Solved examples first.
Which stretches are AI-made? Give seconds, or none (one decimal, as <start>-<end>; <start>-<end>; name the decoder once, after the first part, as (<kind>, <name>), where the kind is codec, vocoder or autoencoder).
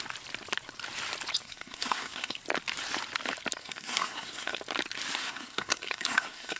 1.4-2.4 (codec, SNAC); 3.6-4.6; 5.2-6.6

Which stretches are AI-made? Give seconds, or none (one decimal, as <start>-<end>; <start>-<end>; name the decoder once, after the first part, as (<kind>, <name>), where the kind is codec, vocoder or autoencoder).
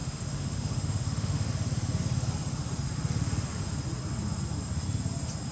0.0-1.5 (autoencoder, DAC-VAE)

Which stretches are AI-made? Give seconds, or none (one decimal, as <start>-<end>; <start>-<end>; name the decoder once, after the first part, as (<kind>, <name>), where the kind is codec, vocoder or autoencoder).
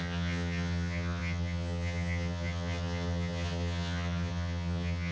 0.0-5.1 (vocoder, HiFi-GAN)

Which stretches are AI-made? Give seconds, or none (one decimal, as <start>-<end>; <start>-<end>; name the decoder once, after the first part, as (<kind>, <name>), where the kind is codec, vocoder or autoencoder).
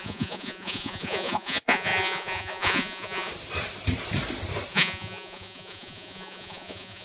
0.0-3.3 (vocoder, Vocos); 4.7-7.0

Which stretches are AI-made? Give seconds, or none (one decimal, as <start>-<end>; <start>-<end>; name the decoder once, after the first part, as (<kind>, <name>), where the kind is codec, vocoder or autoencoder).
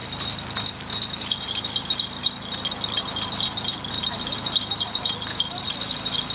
none